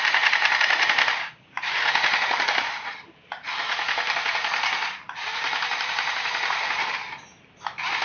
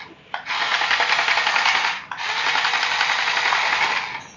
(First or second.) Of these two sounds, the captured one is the second